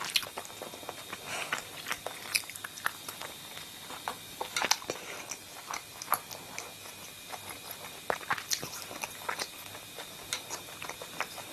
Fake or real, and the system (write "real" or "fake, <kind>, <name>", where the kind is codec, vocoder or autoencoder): real